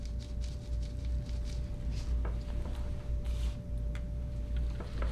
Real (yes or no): yes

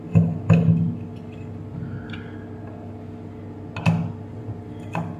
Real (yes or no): yes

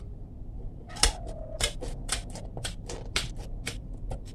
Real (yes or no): yes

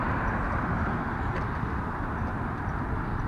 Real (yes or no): no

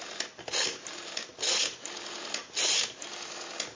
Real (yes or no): yes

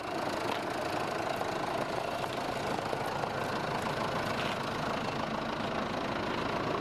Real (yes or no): yes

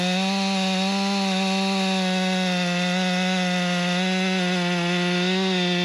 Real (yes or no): yes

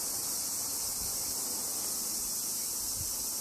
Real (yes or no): yes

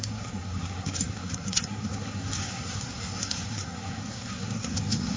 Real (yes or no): no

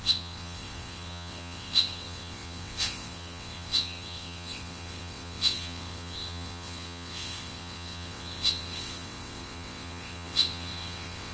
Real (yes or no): no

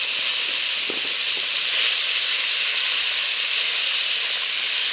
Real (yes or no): yes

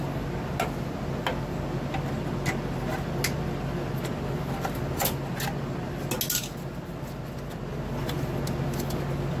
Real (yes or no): yes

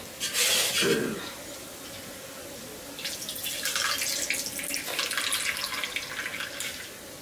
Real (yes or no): yes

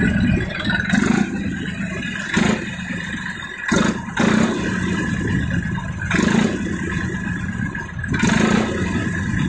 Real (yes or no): yes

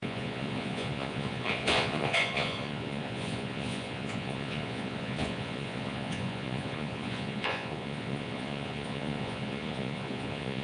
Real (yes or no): no